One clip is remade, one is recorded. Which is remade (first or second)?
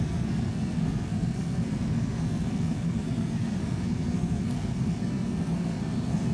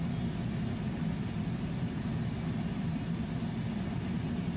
first